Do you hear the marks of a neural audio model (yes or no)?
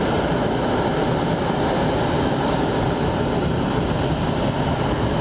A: no